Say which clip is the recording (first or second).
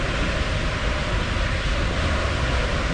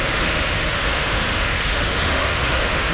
first